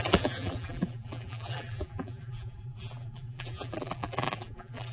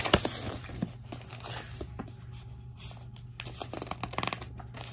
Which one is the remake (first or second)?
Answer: first